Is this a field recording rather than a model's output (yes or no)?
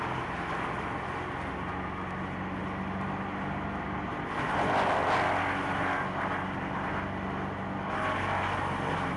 yes